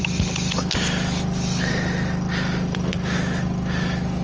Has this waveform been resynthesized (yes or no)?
no